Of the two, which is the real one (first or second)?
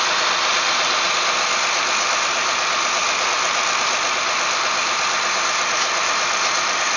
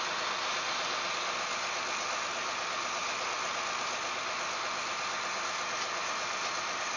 second